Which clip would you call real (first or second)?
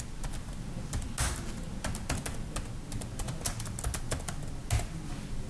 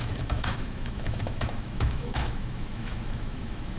first